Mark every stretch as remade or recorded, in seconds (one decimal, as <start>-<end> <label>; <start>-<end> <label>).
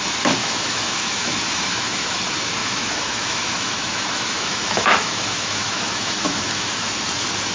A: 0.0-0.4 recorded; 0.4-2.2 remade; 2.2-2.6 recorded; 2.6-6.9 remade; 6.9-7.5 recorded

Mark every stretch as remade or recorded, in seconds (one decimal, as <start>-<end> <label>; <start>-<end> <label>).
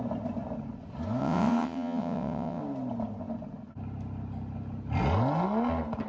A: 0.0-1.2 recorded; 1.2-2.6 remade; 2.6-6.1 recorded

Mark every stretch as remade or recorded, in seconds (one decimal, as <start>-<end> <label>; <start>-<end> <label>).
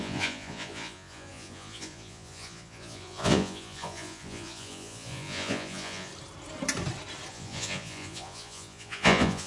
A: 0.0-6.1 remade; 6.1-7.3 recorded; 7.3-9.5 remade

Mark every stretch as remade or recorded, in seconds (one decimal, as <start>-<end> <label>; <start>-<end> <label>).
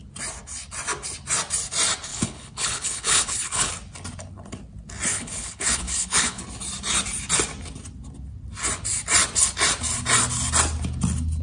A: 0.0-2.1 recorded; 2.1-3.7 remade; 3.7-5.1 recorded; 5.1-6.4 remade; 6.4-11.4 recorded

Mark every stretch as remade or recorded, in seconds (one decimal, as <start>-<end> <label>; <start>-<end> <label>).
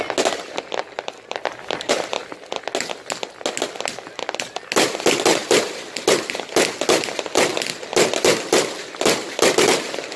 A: 0.0-10.2 recorded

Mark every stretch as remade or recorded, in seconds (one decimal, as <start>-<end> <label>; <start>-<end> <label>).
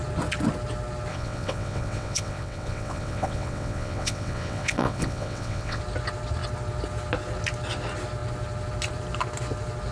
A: 0.0-1.1 recorded; 1.1-5.8 remade; 5.8-9.9 recorded